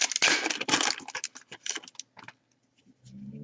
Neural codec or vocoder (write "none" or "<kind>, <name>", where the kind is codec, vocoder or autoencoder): none